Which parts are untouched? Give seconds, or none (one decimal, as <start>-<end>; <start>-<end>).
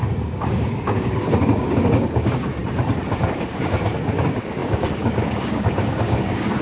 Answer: 2.6-3.2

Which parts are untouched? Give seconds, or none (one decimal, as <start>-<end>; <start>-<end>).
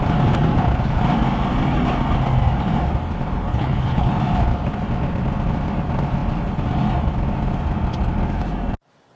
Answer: 0.0-3.5; 4.1-9.2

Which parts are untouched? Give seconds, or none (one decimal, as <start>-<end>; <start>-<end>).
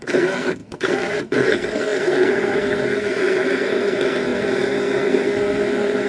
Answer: none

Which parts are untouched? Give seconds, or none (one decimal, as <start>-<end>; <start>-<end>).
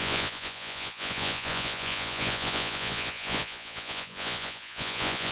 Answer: none